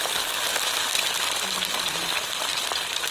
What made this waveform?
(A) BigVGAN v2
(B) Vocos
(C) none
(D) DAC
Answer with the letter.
C